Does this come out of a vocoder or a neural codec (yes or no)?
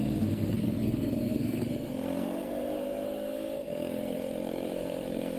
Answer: yes